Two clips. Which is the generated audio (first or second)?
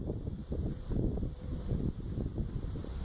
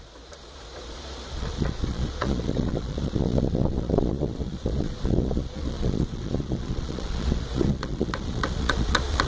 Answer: second